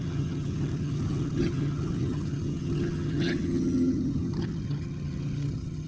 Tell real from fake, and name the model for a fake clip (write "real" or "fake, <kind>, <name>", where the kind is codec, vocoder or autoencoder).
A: fake, vocoder, HiFi-GAN